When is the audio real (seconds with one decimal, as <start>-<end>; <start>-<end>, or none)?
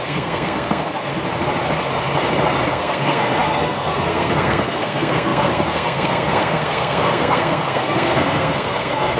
1.1-2.7